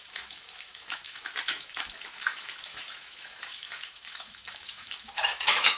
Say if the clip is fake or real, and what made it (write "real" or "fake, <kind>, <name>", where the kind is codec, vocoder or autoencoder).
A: fake, autoencoder, DAC-VAE